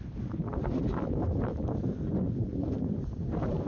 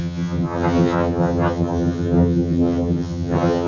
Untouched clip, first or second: first